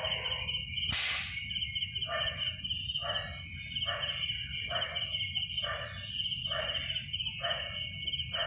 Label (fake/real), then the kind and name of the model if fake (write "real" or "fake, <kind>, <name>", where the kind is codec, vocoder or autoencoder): real